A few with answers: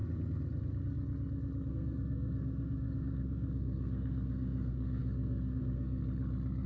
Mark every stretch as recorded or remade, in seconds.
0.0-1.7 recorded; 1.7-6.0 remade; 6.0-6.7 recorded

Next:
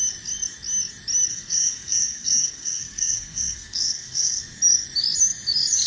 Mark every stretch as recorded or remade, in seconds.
0.0-1.3 recorded; 1.3-4.4 remade; 4.4-5.9 recorded

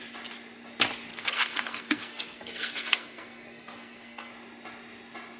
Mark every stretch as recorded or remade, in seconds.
0.0-1.1 recorded; 1.1-4.3 remade; 4.3-5.4 recorded